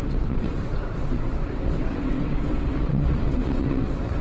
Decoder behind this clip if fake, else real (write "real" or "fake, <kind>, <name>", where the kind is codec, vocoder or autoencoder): fake, vocoder, WaveNeXt